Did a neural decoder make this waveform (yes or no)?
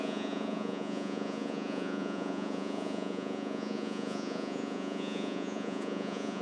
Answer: yes